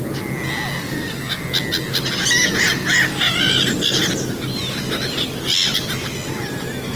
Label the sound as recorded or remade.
recorded